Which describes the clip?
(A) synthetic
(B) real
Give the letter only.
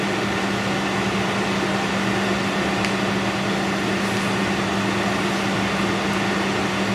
B